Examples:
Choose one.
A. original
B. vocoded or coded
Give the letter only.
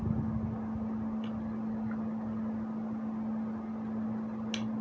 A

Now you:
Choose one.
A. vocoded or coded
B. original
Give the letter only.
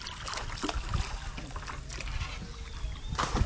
B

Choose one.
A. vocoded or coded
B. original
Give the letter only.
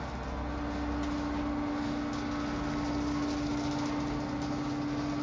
B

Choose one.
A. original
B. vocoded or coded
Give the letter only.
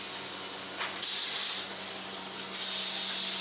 A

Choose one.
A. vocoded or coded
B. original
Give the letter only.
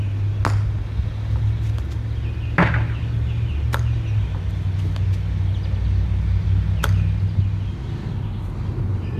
B